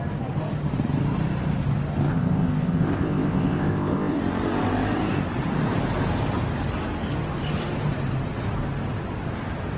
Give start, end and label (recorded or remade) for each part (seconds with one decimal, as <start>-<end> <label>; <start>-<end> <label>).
0.0-2.1 recorded; 2.1-4.2 remade; 4.2-9.8 recorded